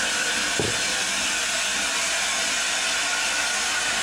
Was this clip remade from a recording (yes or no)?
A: no